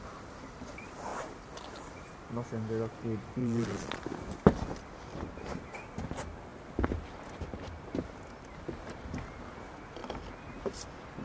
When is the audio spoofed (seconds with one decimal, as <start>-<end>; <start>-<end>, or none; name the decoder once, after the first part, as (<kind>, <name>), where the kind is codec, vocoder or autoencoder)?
3.4-4.0 (vocoder, Vocos)

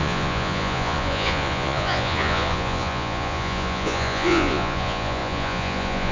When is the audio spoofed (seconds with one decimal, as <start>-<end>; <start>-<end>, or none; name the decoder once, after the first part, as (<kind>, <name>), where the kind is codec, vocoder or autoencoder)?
0.0-6.1 (vocoder, Vocos)

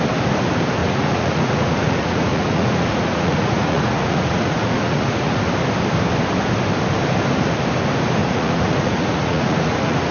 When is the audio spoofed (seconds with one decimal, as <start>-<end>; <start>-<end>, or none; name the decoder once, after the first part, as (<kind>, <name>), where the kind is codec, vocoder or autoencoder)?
0.8-5.4 (vocoder, Vocos); 8.2-10.1

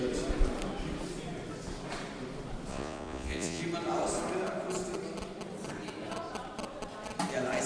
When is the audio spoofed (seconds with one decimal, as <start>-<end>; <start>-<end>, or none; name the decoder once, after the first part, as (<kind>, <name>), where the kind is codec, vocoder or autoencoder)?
2.7-3.6 (vocoder, Vocos)